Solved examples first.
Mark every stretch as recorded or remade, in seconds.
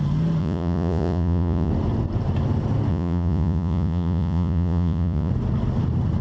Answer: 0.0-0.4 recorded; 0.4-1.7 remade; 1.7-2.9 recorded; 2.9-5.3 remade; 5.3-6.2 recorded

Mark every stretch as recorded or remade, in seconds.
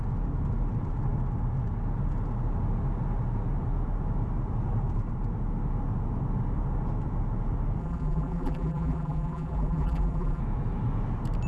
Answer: 0.0-7.8 recorded; 7.8-10.4 remade; 10.4-11.5 recorded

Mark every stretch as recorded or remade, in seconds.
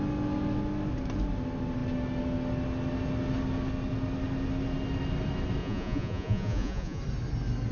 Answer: 0.0-5.6 recorded; 5.6-7.0 remade; 7.0-7.7 recorded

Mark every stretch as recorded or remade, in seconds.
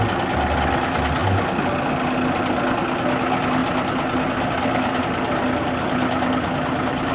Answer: 0.0-7.1 recorded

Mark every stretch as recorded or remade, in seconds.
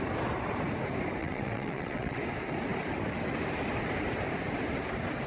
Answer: 0.0-1.2 recorded; 1.2-2.2 remade; 2.2-5.3 recorded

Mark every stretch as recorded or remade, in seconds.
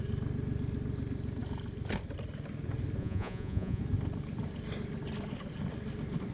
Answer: 0.0-3.0 recorded; 3.0-3.8 remade; 3.8-6.3 recorded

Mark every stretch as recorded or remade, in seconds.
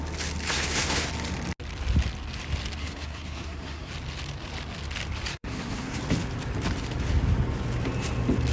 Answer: 0.0-0.5 recorded; 0.5-1.1 remade; 1.1-2.8 recorded; 2.8-3.9 remade; 3.9-5.3 recorded; 5.3-6.0 remade; 6.0-8.5 recorded